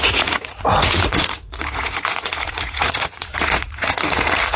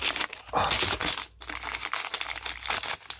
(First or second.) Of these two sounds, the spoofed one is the first